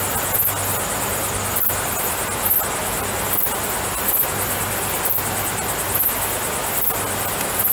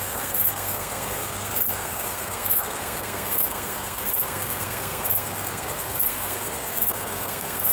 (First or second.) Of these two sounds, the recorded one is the first